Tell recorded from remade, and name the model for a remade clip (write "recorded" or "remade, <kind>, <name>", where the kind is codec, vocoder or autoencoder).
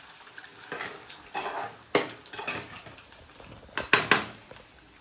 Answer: recorded